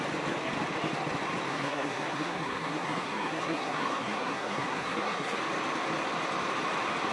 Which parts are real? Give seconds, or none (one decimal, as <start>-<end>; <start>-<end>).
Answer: 0.0-1.5; 5.4-7.1